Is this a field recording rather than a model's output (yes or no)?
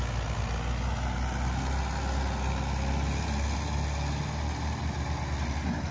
yes